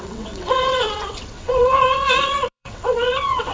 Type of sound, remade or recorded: remade